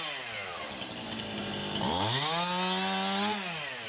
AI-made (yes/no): no